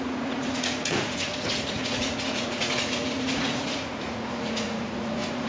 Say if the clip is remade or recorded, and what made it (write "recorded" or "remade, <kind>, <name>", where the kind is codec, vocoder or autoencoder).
remade, vocoder, Vocos